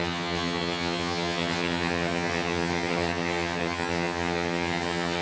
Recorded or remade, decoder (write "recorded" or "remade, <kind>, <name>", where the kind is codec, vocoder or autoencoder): remade, vocoder, HiFi-GAN